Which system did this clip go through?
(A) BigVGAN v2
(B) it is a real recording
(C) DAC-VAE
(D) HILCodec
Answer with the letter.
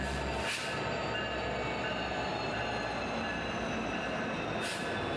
B